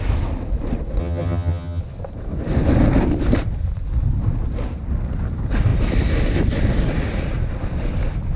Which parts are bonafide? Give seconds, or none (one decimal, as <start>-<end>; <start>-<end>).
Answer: 0.0-1.0; 1.8-8.4